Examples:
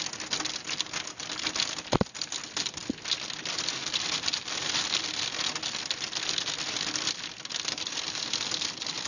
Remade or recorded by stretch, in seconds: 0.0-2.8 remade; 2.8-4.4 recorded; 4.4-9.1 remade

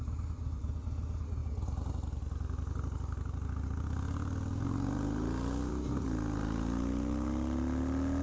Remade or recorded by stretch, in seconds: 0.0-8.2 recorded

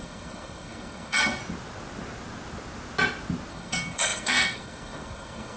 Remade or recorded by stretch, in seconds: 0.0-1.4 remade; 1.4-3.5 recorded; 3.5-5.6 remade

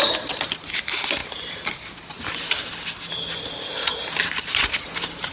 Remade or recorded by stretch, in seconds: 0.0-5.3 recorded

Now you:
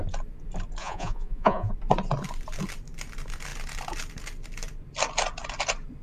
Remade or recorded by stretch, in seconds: 0.0-0.8 recorded; 0.8-1.7 remade; 1.7-6.0 recorded

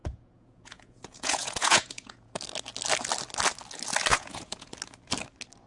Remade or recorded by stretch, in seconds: 0.0-2.4 remade; 2.4-4.1 recorded; 4.1-4.7 remade; 4.7-5.7 recorded

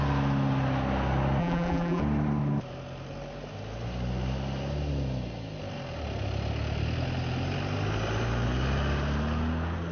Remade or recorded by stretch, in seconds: 0.0-1.4 recorded; 1.4-2.0 remade; 2.0-9.9 recorded